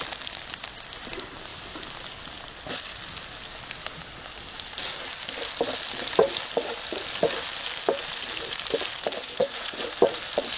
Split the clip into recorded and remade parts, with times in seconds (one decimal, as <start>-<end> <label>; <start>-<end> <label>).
0.0-9.4 recorded; 9.4-9.9 remade; 9.9-10.6 recorded